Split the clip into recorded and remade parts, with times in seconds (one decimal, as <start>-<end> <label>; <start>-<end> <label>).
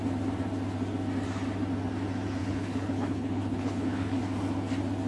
0.0-2.4 recorded; 2.4-4.2 remade; 4.2-5.1 recorded